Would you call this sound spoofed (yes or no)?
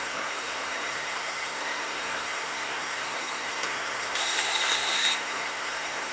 yes